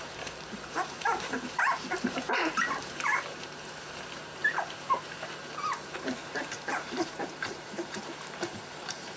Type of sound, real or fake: fake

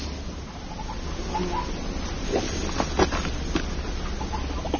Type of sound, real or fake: real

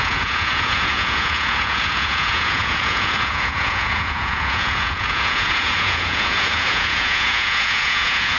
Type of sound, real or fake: fake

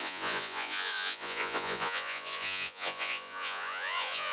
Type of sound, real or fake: fake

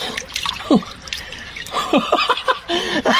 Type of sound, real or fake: fake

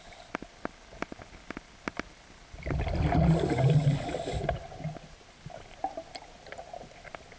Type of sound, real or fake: real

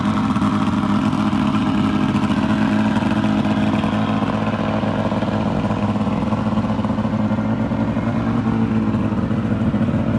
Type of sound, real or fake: real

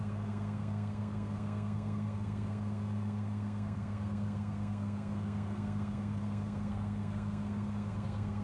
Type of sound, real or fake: fake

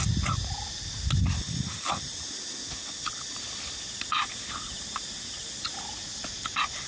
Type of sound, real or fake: real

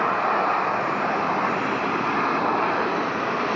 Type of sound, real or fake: real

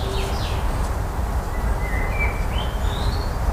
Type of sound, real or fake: real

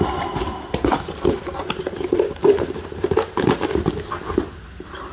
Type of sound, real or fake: real